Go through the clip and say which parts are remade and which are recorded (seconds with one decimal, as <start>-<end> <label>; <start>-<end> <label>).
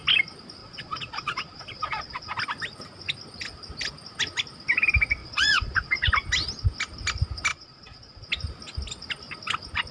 0.0-0.6 recorded; 0.6-2.3 remade; 2.3-5.2 recorded; 5.2-6.1 remade; 6.1-7.5 recorded; 7.5-8.3 remade; 8.3-9.9 recorded